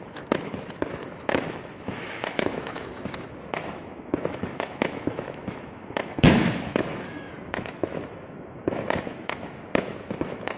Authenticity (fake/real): fake